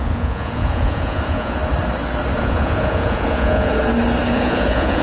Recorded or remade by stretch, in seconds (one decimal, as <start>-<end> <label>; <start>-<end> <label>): 0.0-1.6 remade; 1.6-2.4 recorded; 2.4-3.7 remade; 3.7-4.3 recorded; 4.3-5.0 remade